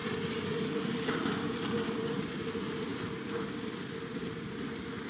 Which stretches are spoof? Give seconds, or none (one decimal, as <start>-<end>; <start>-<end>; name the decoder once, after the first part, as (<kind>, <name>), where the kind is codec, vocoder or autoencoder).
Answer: none